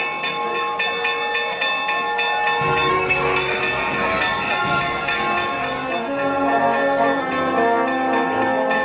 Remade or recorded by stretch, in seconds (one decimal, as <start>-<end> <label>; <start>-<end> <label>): 0.0-2.9 recorded; 2.9-3.6 remade; 3.6-8.8 recorded